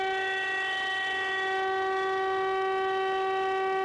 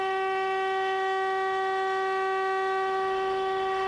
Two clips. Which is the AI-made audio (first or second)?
second